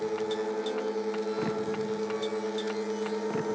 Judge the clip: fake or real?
real